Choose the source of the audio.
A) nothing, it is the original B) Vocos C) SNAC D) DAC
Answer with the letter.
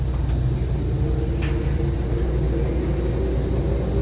A